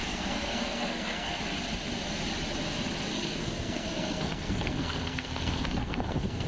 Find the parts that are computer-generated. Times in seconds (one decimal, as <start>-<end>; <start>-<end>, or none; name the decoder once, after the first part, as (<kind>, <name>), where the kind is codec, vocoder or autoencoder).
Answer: 0.0-1.4 (codec, SNAC); 3.1-6.5